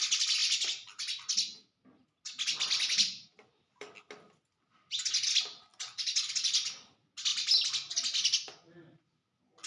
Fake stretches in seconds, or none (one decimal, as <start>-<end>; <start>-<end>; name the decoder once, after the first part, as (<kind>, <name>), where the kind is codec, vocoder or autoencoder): none